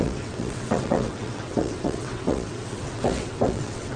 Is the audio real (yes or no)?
no